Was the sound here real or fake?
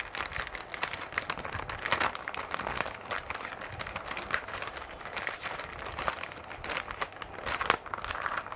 real